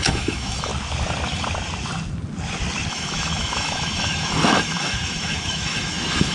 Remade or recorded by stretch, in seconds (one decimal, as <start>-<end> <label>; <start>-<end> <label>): 0.0-0.7 remade; 0.7-2.9 recorded; 2.9-6.3 remade

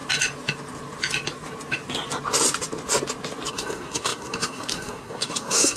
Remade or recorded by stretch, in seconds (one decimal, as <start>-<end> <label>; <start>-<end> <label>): 0.0-3.5 recorded; 3.5-5.8 remade

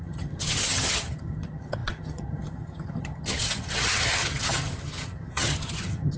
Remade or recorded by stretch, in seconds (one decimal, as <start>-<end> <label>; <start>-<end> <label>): 0.0-6.2 remade

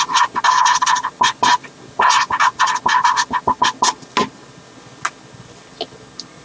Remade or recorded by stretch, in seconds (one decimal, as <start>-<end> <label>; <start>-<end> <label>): 0.0-6.4 recorded

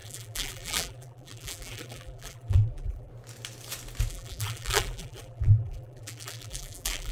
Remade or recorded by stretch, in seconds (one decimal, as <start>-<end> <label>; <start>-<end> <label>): 0.0-3.1 remade; 3.1-4.1 recorded; 4.1-7.1 remade